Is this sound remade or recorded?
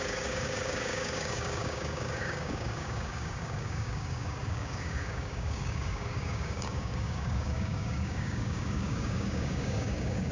remade